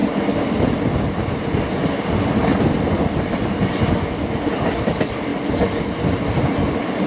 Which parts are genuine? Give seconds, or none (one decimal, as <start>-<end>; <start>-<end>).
0.0-7.1